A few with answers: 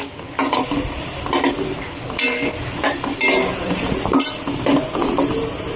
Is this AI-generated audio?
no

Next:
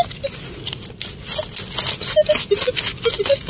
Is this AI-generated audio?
no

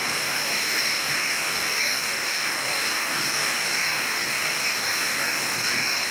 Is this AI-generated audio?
yes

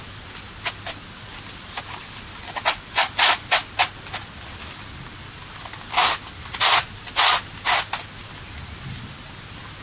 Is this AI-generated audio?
no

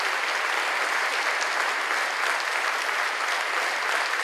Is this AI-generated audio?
no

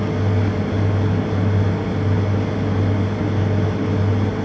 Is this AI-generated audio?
no